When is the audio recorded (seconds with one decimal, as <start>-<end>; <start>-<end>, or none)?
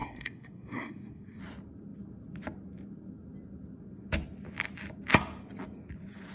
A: 1.4-6.3